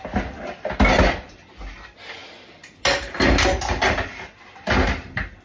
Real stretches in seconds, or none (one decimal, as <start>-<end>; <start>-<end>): 0.0-5.4